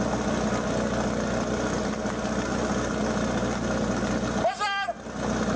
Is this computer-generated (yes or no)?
no